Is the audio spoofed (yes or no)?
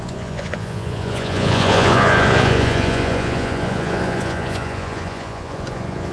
yes